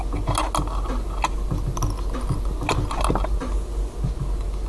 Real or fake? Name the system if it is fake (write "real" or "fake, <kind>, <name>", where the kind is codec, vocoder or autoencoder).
real